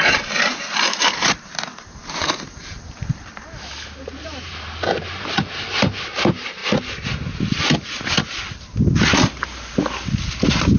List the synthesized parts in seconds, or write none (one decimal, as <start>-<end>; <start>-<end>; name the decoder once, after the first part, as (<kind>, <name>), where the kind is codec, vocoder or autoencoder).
0.0-6.6 (vocoder, BigVGAN v2)